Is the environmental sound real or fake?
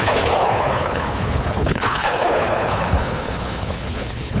fake